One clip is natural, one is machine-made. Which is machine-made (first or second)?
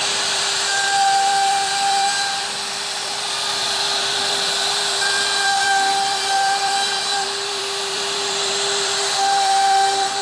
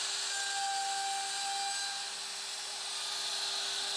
first